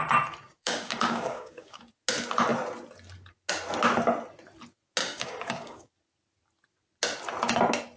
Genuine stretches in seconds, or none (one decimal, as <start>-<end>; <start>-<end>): 0.0-0.6; 1.8-5.0; 5.9-8.0